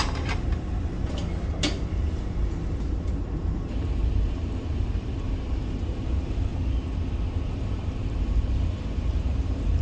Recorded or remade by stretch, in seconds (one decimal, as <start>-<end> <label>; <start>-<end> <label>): 0.0-1.2 remade; 1.2-1.8 recorded; 1.8-6.5 remade; 6.5-7.5 recorded; 7.5-9.8 remade